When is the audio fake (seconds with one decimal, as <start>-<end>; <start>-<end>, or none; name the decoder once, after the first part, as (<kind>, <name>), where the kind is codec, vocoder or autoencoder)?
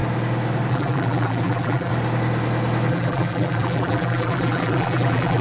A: 0.7-1.9 (vocoder, BigVGAN v2); 2.9-5.4